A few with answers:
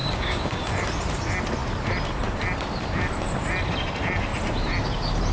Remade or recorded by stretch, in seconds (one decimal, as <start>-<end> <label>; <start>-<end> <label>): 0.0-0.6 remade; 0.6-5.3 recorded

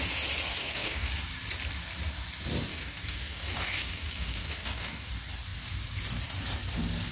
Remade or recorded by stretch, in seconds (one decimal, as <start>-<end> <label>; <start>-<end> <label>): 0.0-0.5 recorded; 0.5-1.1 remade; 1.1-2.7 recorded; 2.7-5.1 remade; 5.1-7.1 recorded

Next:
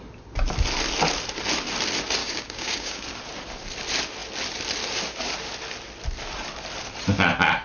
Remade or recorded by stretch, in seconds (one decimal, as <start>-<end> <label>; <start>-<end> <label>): 0.0-2.2 recorded; 2.2-3.0 remade; 3.0-7.6 recorded